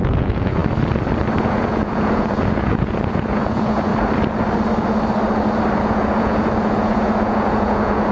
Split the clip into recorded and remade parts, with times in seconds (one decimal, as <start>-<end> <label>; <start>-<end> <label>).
0.0-0.6 remade; 0.6-1.4 recorded; 1.4-3.9 remade; 3.9-5.8 recorded; 5.8-8.1 remade